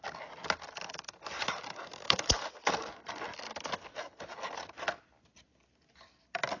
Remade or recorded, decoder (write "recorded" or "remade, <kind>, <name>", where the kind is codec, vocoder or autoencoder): recorded